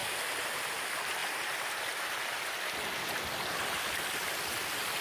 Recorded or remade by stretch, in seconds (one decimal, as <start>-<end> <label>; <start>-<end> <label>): 0.0-5.0 recorded